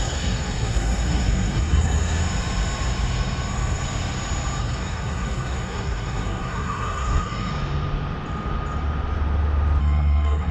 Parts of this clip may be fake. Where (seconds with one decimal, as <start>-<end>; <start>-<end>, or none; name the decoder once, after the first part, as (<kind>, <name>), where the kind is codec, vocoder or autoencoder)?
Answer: 0.0-2.2 (codec, SNAC); 4.6-7.5; 9.8-10.5